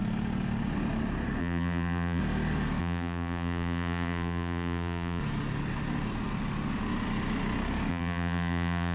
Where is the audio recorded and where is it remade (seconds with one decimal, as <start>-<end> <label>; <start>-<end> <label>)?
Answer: 0.0-1.4 recorded; 1.4-2.2 remade; 2.2-2.8 recorded; 2.8-5.2 remade; 5.2-7.9 recorded; 7.9-8.9 remade